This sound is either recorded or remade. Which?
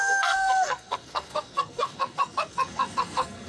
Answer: remade